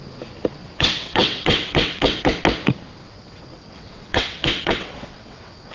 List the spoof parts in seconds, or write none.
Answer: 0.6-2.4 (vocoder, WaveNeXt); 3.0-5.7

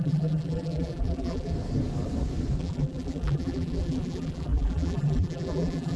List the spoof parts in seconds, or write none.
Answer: 0.0-1.5 (vocoder, BigVGAN v2); 2.6-6.0

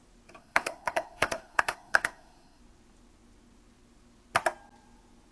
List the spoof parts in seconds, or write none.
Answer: 0.4-2.6 (codec, SNAC)

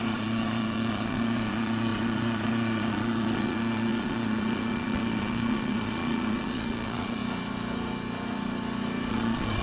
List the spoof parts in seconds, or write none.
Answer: 0.0-7.2 (vocoder, Vocos); 9.1-9.6

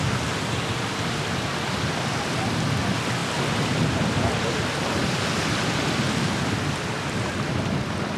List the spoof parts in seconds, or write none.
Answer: 0.0-8.2 (vocoder, BigVGAN v2)

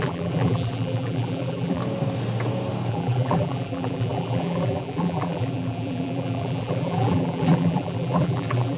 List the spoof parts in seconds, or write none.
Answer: 0.0-1.8 (vocoder, BigVGAN v2); 2.9-8.8

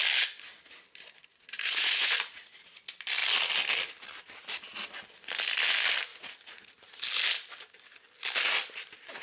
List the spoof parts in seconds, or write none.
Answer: 1.3-2.8 (vocoder, Vocos); 6.1-7.0

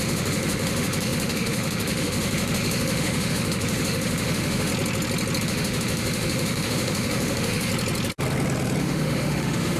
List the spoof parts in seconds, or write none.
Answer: 0.0-4.7 (autoencoder, DAC-VAE); 5.4-7.7; 8.8-9.8